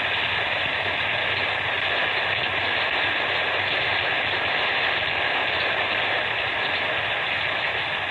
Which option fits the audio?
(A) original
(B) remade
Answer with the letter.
A